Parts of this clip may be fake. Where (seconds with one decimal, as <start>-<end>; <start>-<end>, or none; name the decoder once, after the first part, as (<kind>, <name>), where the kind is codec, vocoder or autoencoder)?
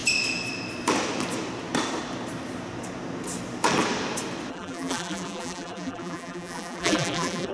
4.5-7.5 (vocoder, BigVGAN v2)